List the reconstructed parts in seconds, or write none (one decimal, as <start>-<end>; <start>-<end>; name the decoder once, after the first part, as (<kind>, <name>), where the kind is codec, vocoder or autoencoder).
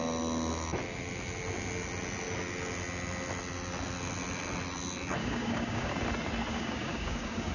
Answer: 5.2-5.9 (codec, DAC); 6.5-7.5